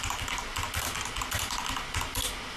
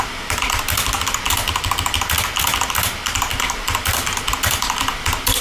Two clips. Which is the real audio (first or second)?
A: first